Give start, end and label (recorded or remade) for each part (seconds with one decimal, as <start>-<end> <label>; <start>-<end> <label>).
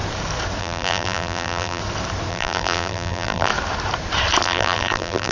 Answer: 0.0-0.6 recorded; 0.6-1.8 remade; 1.8-2.3 recorded; 2.3-3.5 remade; 3.5-4.4 recorded; 4.4-5.3 remade